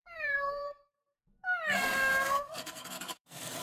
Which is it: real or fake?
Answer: fake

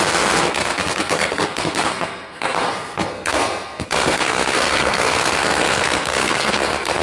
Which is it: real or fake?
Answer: fake